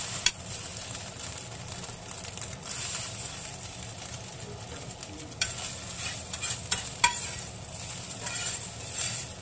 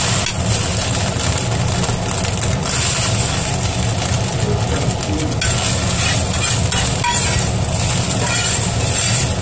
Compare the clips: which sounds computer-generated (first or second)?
first